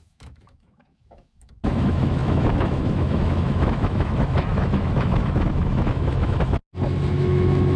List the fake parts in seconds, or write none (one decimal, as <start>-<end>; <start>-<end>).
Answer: 0.0-6.6; 7.1-7.8

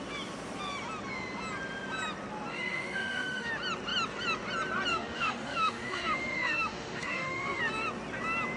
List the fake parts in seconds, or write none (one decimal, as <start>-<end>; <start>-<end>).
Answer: 2.5-3.5; 4.9-7.6

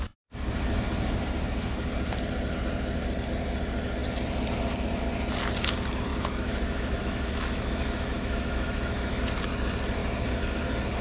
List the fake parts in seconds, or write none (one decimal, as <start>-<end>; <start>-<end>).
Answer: 6.1-9.2

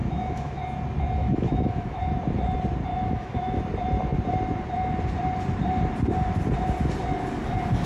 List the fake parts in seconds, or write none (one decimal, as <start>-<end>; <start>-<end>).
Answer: 0.0-0.6; 1.2-2.0; 2.9-3.6

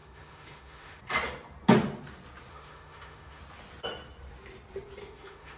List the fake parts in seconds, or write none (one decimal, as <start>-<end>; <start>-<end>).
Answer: 0.0-1.0; 2.5-3.4; 5.0-5.6

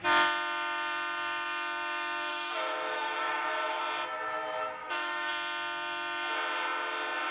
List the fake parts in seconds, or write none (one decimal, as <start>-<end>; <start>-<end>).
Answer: 2.3-3.8; 4.8-5.3

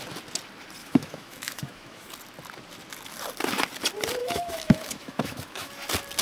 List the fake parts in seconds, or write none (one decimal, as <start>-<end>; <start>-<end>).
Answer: 0.8-2.1; 4.2-5.7